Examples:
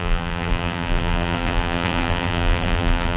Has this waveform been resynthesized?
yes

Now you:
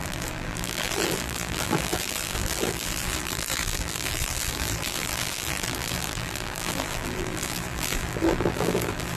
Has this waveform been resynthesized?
yes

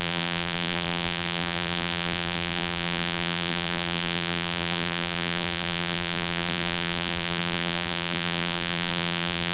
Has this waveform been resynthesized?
yes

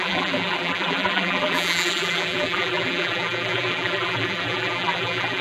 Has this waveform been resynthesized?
yes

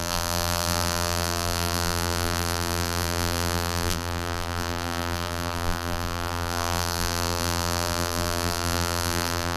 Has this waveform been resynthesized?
yes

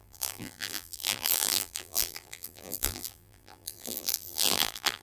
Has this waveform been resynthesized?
yes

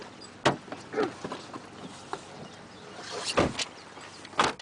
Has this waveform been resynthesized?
no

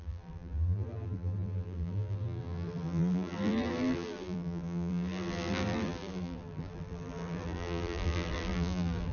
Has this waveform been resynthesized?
yes